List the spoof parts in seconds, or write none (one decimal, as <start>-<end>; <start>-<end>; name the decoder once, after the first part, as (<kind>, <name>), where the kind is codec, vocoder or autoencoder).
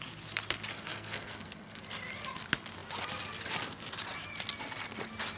0.7-1.8 (codec, SNAC)